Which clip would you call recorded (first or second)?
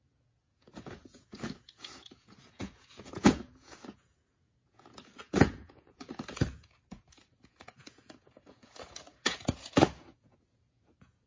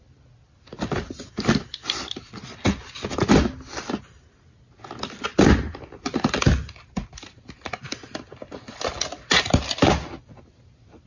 second